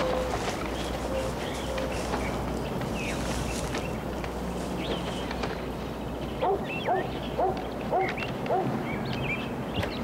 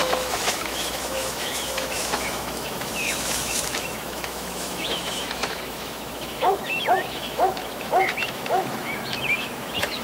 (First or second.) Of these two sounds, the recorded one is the first